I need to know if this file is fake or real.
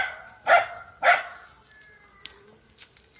real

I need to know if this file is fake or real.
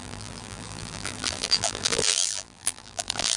fake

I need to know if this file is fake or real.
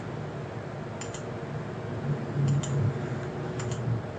real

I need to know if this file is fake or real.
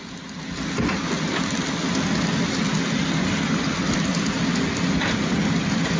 real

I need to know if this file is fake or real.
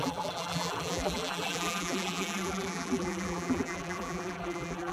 fake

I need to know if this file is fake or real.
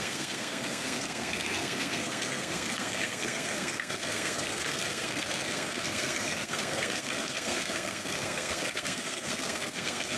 fake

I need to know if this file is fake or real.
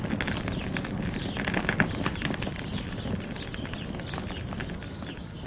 real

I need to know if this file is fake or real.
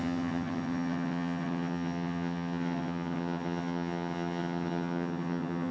fake